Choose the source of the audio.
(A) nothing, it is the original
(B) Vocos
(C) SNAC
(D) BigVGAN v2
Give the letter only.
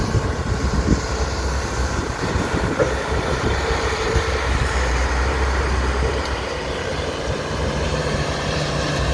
D